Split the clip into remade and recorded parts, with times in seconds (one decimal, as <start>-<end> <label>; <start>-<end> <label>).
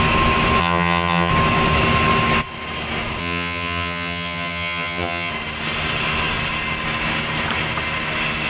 0.0-0.6 recorded; 0.6-1.3 remade; 1.3-3.2 recorded; 3.2-5.3 remade; 5.3-8.5 recorded